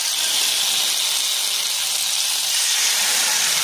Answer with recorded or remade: recorded